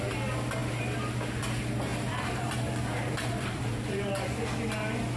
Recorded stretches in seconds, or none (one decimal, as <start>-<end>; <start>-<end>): 0.0-1.9; 4.0-5.2